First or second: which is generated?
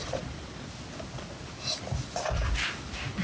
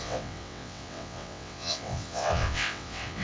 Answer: second